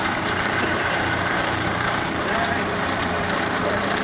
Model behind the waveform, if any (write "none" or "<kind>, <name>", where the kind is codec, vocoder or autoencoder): vocoder, BigVGAN v2